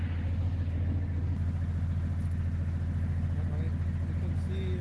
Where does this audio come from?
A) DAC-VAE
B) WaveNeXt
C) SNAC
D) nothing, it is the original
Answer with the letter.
D